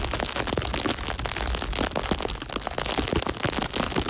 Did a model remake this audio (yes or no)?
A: no